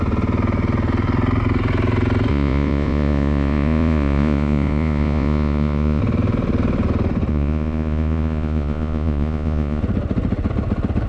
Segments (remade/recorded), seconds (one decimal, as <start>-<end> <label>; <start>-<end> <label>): 0.0-2.3 recorded; 2.3-6.0 remade; 6.0-7.3 recorded; 7.3-9.8 remade; 9.8-11.1 recorded